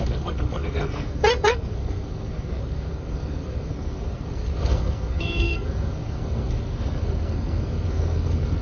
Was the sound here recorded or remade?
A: remade